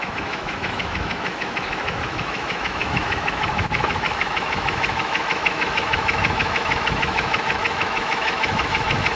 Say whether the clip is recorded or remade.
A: remade